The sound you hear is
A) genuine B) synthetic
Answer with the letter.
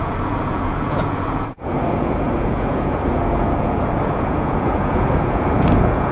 B